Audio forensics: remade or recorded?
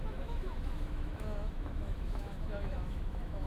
remade